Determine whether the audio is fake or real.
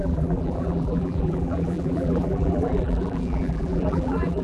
fake